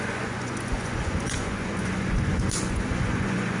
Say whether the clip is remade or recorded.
remade